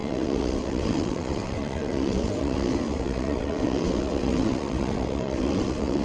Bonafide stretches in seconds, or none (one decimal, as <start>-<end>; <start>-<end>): none